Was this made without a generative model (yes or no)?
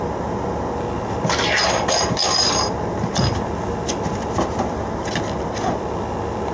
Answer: yes